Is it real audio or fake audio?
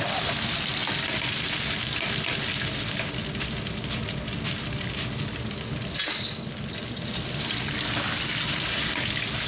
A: real